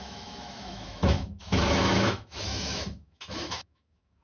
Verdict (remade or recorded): remade